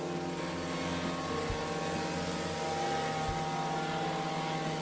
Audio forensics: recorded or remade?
recorded